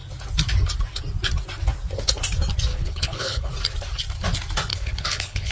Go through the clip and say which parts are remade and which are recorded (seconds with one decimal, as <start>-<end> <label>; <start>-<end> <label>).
0.0-2.7 recorded; 2.7-3.5 remade; 3.5-4.7 recorded; 4.7-5.5 remade